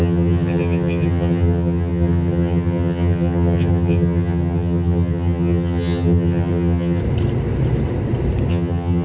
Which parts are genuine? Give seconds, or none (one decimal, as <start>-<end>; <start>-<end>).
7.0-8.5

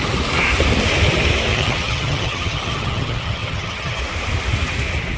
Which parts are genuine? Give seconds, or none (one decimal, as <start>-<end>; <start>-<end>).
0.0-1.5; 4.0-5.2

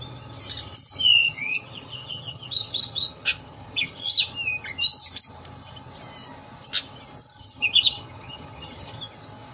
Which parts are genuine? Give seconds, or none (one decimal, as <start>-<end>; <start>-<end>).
0.0-1.2; 4.2-7.4; 9.0-9.5

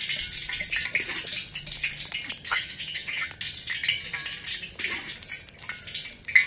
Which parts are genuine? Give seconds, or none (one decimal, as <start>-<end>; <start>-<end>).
0.0-2.5; 3.3-6.5

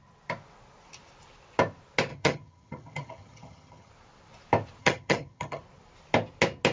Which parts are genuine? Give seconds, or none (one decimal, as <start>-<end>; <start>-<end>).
0.0-2.1; 3.9-4.8; 5.6-6.7

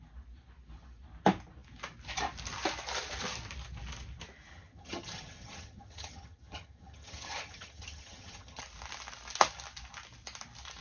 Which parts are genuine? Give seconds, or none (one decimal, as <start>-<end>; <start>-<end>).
0.0-4.5; 8.6-10.8